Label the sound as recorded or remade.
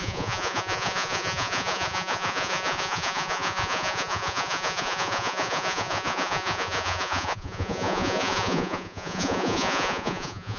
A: remade